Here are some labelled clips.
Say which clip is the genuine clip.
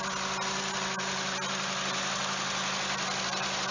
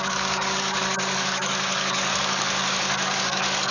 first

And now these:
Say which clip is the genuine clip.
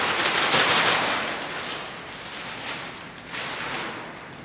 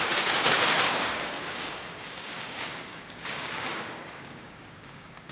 first